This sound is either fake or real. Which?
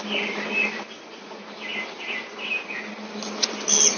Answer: real